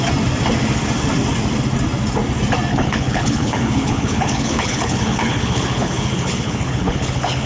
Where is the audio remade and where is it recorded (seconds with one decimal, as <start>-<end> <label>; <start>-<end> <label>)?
0.0-2.7 recorded; 2.7-7.5 remade